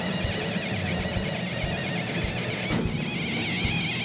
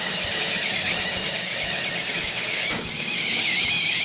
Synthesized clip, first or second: second